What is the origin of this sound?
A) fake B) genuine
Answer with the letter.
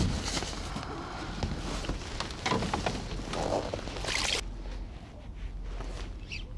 B